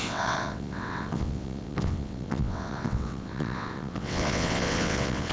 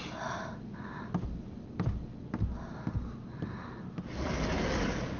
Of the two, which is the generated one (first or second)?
first